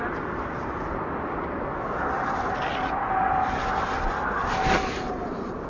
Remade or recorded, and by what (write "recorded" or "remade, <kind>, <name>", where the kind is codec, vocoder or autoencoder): recorded